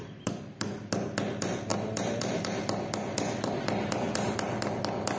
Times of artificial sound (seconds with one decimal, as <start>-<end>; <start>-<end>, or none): none